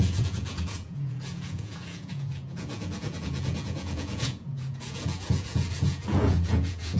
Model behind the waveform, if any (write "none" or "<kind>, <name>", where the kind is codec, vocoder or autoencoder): vocoder, Vocos